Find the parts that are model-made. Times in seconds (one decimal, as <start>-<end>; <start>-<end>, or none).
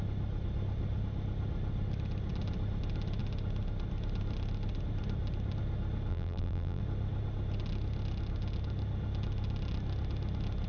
6.1-6.8